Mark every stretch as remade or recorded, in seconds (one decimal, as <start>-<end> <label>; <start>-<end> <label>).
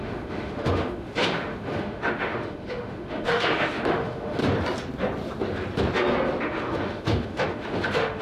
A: 0.0-4.4 remade; 4.4-6.4 recorded; 6.4-8.2 remade